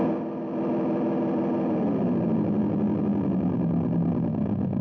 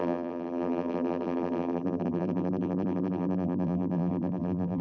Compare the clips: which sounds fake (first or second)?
second